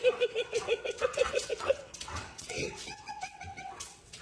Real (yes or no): no